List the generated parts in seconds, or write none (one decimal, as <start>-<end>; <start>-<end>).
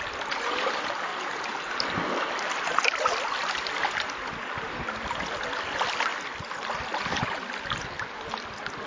none